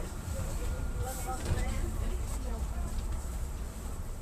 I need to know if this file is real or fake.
fake